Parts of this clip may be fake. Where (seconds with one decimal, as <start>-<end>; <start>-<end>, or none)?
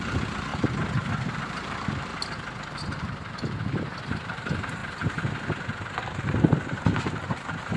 0.0-2.1; 2.6-4.8; 7.0-7.8